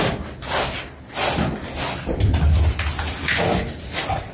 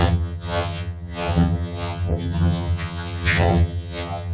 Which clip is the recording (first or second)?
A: first